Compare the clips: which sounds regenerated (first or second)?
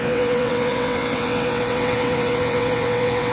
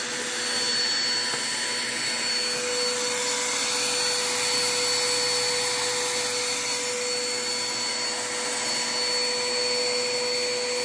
first